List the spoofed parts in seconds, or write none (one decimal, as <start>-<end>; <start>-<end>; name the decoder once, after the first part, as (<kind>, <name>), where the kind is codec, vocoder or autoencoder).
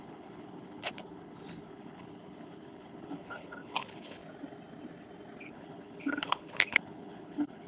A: 0.0-4.2 (codec, HILCodec); 5.5-7.7